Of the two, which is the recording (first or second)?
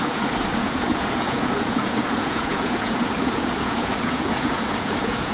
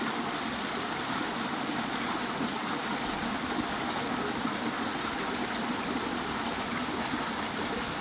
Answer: second